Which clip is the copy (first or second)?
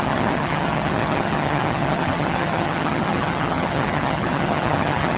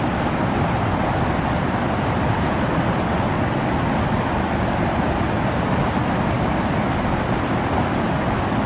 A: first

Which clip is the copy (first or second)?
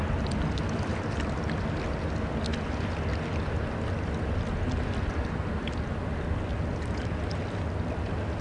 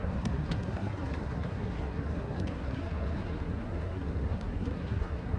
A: second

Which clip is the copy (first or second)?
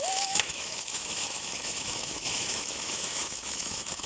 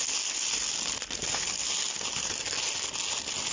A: first